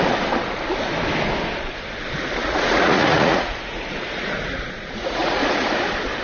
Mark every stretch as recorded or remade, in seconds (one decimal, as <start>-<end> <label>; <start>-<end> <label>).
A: 0.0-2.4 recorded; 2.4-5.4 remade; 5.4-6.2 recorded